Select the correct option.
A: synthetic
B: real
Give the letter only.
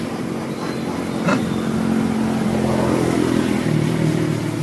B